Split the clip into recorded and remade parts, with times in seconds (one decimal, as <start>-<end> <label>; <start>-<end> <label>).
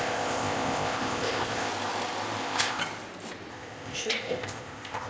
0.0-1.7 remade; 1.7-2.4 recorded; 2.4-2.8 remade; 2.8-3.5 recorded; 3.5-5.1 remade